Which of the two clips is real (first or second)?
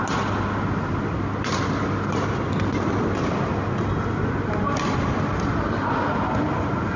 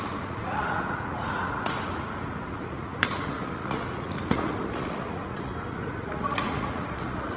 first